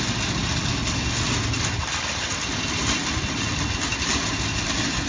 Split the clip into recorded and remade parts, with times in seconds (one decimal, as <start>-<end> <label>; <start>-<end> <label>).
0.0-3.9 recorded; 3.9-4.4 remade; 4.4-5.1 recorded